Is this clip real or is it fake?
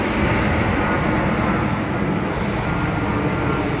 real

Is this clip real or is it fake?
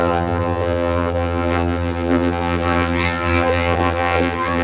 fake